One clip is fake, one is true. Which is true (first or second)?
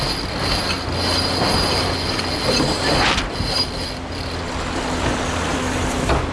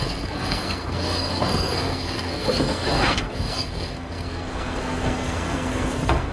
first